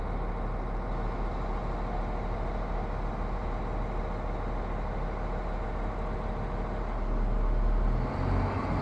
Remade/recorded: recorded